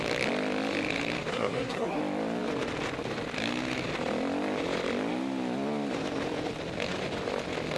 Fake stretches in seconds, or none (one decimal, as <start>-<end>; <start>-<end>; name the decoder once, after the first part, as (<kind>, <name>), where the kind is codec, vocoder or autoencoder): 1.3-2.0 (codec, SNAC)